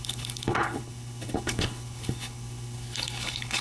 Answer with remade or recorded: remade